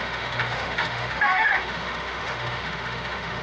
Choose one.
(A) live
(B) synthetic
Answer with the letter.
B